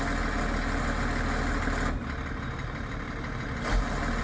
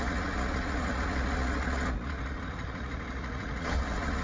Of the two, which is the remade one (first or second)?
second